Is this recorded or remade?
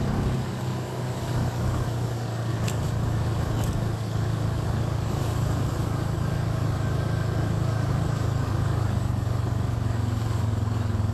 remade